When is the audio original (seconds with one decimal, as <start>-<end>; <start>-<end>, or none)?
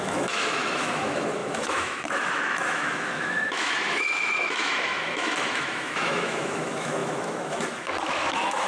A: none